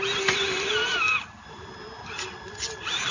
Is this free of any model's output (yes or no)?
yes